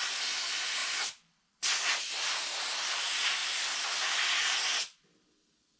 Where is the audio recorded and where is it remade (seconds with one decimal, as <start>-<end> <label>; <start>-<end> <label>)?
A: 0.0-0.8 recorded; 0.8-3.0 remade; 3.0-3.4 recorded; 3.4-4.2 remade; 4.2-5.8 recorded